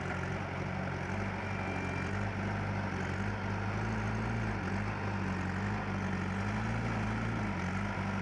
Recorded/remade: recorded